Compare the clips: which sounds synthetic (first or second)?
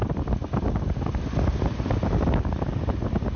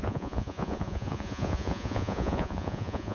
second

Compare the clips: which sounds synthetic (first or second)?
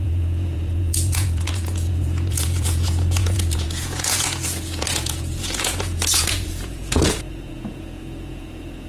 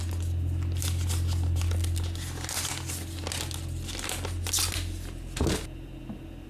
first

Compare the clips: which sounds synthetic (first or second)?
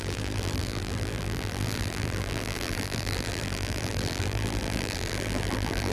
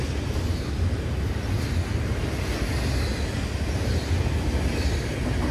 first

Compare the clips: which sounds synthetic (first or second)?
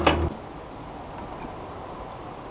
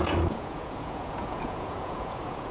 second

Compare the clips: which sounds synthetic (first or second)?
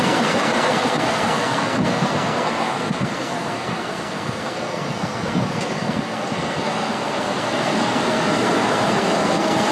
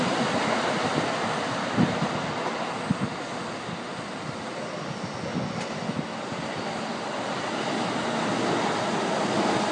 first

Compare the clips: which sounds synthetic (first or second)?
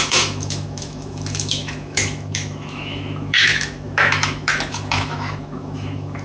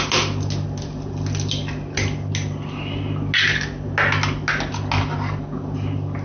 first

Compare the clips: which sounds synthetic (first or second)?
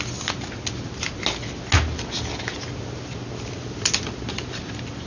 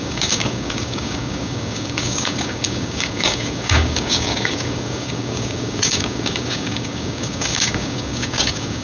second